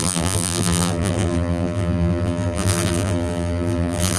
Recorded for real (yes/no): no